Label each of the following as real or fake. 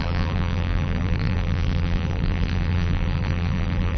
fake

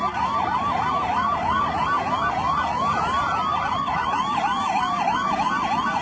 real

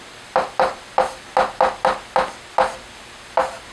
real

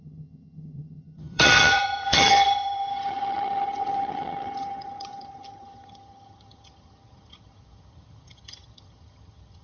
fake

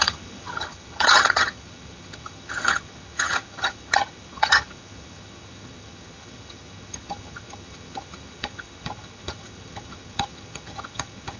fake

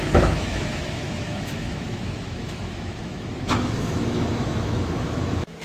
fake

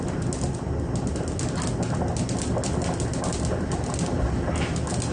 real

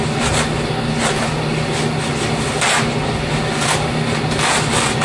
real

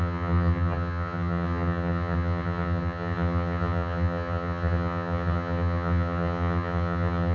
fake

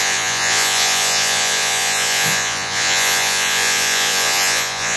fake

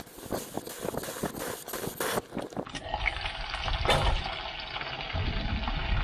real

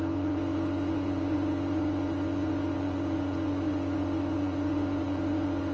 fake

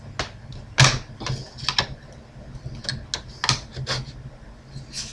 real